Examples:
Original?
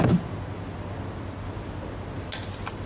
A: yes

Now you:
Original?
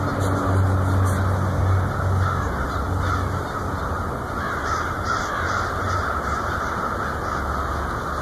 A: yes